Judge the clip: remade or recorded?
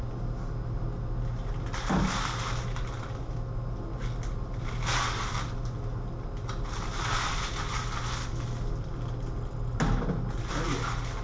recorded